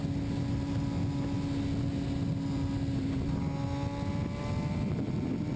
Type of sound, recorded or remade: recorded